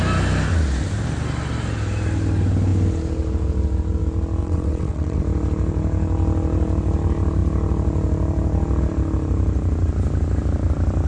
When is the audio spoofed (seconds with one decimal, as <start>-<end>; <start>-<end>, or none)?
4.4-5.2